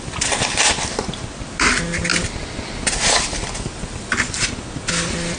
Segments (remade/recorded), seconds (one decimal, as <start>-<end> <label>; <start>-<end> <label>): 0.0-5.4 recorded